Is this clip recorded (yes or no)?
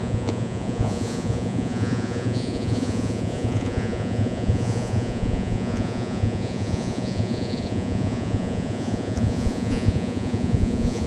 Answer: no